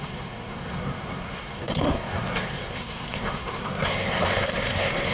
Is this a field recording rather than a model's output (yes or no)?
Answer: no